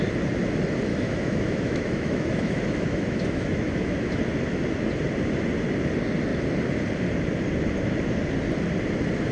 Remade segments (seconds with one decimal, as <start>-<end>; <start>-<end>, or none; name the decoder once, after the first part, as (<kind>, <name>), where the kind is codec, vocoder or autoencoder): 0.9-4.2 (autoencoder, DAC-VAE)